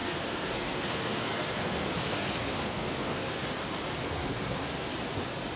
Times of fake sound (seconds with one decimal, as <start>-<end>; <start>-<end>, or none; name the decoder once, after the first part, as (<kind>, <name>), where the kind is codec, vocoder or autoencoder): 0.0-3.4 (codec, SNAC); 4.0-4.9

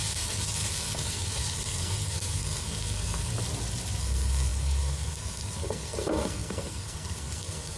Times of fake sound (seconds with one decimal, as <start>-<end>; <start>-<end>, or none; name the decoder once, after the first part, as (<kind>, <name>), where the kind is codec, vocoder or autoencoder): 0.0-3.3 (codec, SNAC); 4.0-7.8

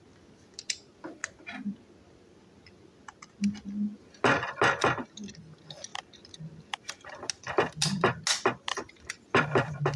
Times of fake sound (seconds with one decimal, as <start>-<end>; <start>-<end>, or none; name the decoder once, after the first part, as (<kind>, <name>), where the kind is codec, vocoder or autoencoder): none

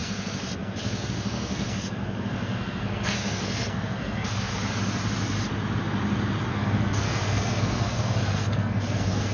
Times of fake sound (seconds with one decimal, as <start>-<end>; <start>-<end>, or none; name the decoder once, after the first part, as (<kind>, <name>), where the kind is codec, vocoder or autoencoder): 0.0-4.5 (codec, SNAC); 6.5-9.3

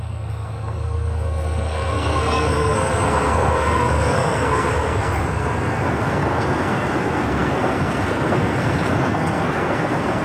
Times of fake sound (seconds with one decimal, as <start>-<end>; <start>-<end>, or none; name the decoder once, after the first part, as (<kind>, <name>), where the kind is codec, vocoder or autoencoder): 0.0-10.2 (codec, SNAC)